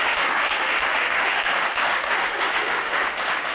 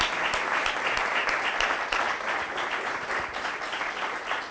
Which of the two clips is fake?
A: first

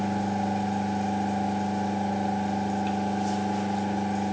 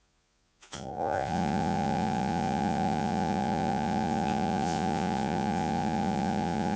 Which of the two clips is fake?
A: second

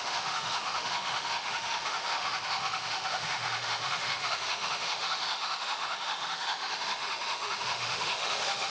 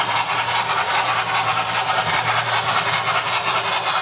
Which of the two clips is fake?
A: first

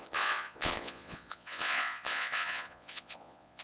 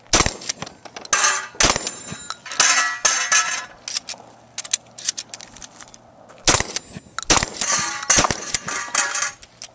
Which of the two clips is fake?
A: first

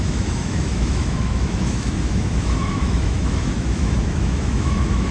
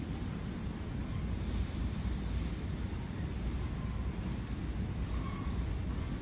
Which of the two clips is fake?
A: first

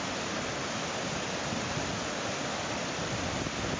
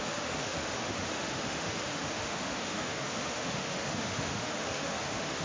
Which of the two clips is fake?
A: second